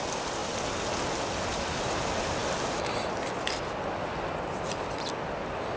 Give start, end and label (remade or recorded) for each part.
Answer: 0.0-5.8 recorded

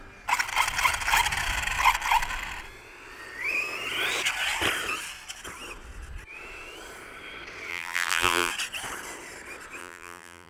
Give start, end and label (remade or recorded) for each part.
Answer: 0.0-7.7 recorded; 7.7-8.5 remade; 8.5-9.8 recorded; 9.8-10.5 remade

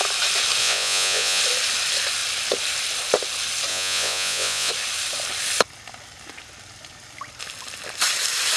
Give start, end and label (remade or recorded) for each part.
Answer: 0.0-0.6 recorded; 0.6-1.4 remade; 1.4-3.7 recorded; 3.7-4.7 remade; 4.7-8.6 recorded

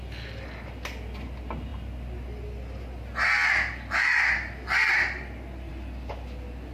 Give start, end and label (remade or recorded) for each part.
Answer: 0.0-6.7 recorded

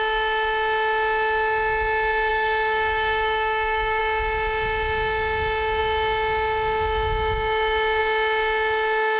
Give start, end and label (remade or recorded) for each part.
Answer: 0.0-2.3 recorded; 2.3-4.0 remade; 4.0-9.2 recorded

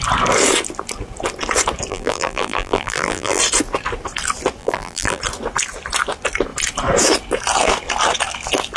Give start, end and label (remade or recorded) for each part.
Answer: 0.0-1.9 recorded; 1.9-3.4 remade; 3.4-4.6 recorded; 4.6-5.2 remade; 5.2-8.8 recorded